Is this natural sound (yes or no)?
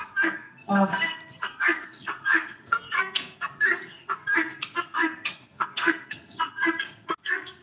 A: no